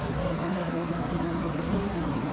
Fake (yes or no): yes